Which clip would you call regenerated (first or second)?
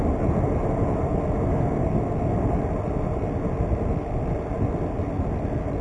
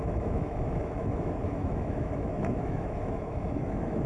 second